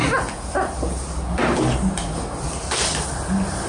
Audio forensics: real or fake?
real